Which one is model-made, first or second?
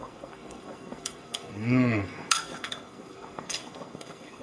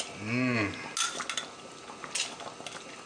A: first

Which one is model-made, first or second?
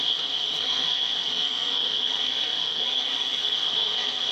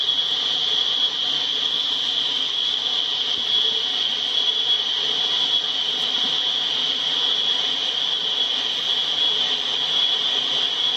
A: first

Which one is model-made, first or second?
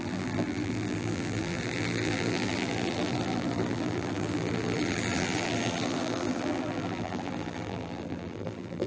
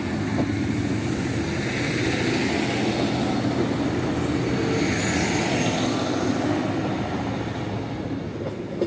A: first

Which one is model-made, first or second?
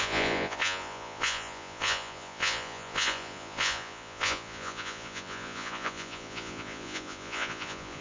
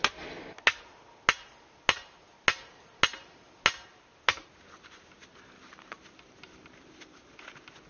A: first